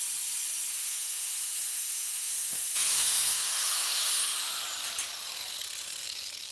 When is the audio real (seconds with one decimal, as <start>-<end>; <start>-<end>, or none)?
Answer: 0.0-0.7; 4.6-6.5

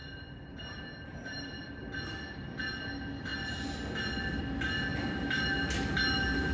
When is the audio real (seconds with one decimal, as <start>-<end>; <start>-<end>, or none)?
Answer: 2.1-4.9; 5.4-6.5

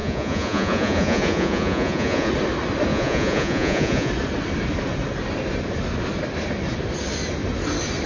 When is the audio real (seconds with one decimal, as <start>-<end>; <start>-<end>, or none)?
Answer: 2.3-2.9; 4.1-8.1